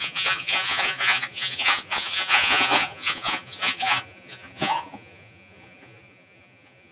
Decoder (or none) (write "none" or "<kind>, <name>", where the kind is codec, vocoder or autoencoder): vocoder, Vocos